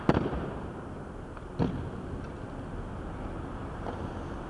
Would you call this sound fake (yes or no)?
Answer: no